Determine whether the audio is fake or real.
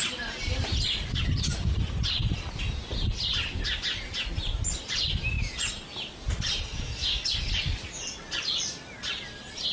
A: real